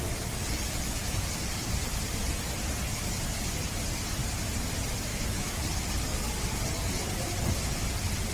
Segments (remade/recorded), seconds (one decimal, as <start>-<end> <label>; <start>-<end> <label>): 0.0-5.1 recorded; 5.1-5.6 remade; 5.6-8.3 recorded